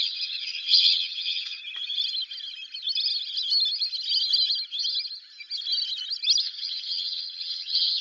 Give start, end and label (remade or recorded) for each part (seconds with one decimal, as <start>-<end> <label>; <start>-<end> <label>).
0.0-1.6 remade; 1.6-6.4 recorded; 6.4-8.0 remade